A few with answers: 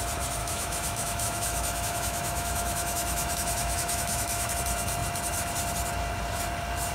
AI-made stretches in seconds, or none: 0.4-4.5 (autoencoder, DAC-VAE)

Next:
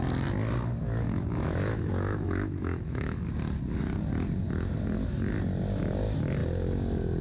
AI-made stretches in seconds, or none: 0.8-3.3 (autoencoder, DAC-VAE)

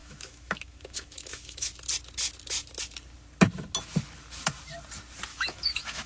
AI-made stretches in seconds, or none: 0.0-1.7 (autoencoder, DAC-VAE); 5.3-6.1

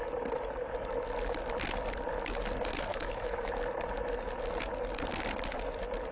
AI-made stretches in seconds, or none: 2.9-3.5 (autoencoder, DAC-VAE)

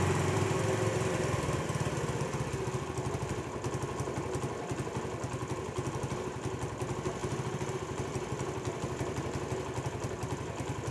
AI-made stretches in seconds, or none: none

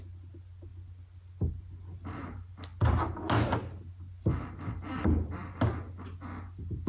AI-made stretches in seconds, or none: none

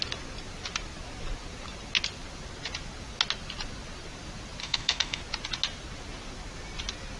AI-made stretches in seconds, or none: 4.6-5.2 (autoencoder, DAC-VAE)